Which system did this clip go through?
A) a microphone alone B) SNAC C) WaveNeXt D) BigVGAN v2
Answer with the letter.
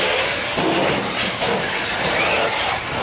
A